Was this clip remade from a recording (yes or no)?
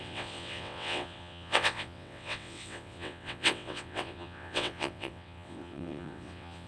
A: yes